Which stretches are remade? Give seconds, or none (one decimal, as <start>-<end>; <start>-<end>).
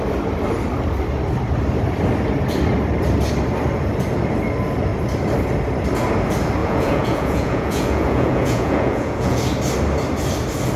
6.6-9.4